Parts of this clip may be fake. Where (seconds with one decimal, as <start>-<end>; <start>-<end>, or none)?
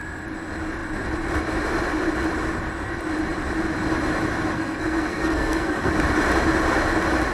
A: 4.5-5.9